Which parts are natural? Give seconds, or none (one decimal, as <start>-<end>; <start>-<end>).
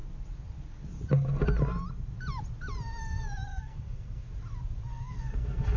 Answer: 0.0-3.5; 4.3-4.9